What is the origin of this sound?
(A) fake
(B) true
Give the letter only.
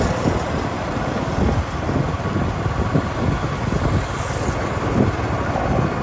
B